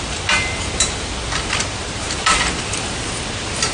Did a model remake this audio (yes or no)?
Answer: yes